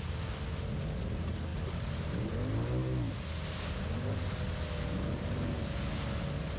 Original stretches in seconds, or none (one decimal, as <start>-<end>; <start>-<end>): 0.0-6.6